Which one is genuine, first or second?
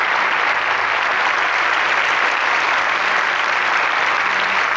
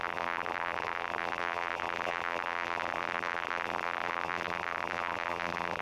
first